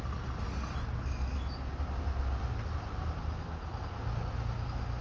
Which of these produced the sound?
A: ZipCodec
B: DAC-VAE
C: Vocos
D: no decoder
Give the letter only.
D